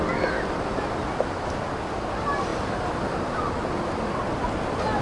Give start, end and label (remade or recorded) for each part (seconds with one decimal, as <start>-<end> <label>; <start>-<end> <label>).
0.0-5.0 recorded